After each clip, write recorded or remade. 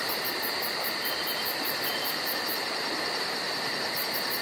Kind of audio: remade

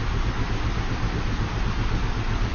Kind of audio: recorded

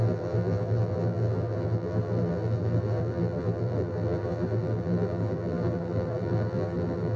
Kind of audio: remade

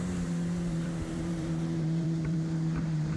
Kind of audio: remade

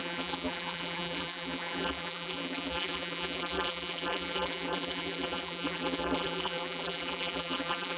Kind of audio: remade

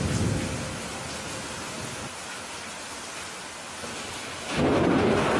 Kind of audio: recorded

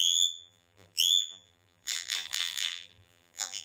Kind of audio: remade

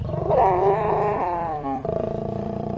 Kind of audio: remade